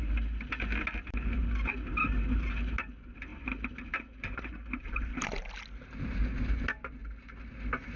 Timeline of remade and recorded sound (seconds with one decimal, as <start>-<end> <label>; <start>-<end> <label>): 0.0-8.0 recorded